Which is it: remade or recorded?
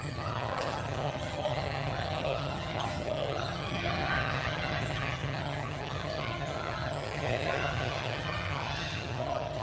remade